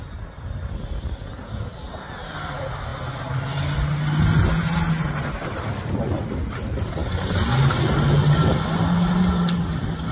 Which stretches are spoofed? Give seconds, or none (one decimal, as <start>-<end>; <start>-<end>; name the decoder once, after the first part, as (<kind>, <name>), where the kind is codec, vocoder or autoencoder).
1.7-2.3 (vocoder, BigVGAN v2)